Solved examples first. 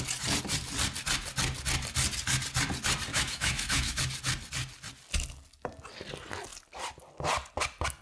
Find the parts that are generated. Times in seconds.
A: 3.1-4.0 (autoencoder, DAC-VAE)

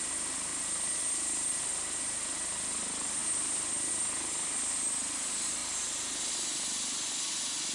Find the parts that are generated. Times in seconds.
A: none

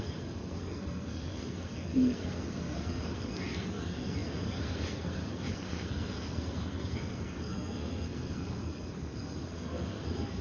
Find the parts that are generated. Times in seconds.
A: 0.0-10.4 (codec, SNAC)

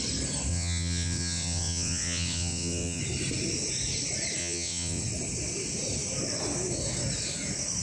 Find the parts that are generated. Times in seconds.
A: 0.5-3.0 (vocoder, WaveNeXt); 4.4-5.0

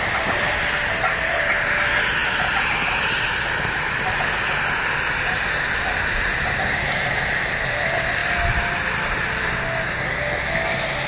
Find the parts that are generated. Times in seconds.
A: none

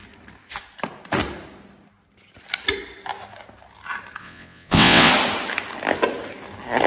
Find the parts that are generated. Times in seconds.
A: 4.2-5.1 (vocoder, WaveNeXt)